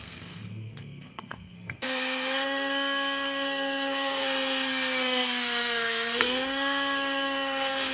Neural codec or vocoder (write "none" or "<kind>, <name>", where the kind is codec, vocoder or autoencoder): codec, SNAC